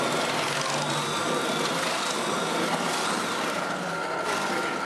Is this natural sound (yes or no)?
yes